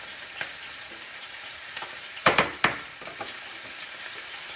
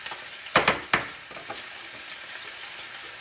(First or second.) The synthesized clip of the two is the first